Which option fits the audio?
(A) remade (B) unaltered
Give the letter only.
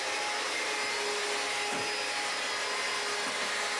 B